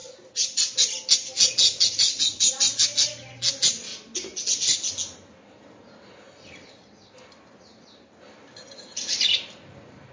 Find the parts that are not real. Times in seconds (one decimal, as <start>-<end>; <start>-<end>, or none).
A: none